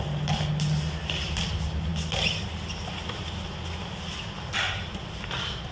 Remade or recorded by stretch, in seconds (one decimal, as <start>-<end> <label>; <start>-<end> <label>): 0.0-5.7 recorded